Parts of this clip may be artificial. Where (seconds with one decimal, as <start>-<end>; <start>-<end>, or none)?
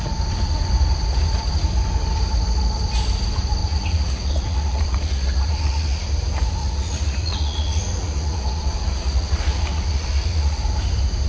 3.6-6.1; 6.6-10.6